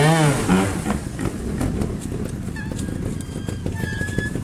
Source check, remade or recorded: recorded